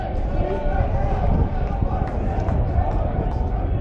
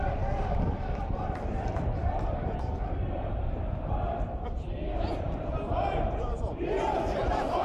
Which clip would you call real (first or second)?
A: first